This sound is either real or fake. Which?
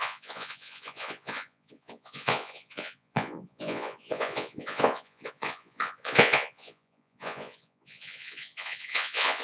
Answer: fake